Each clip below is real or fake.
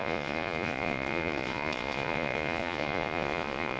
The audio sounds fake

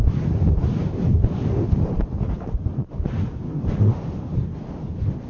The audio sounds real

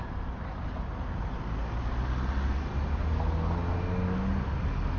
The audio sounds real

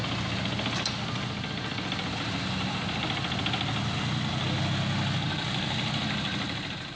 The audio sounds real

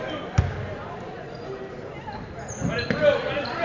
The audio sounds real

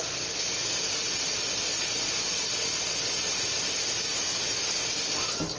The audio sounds real